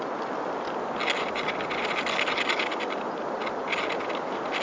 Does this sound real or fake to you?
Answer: real